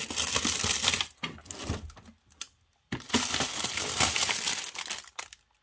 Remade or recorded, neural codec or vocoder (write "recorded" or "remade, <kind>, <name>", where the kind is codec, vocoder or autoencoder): recorded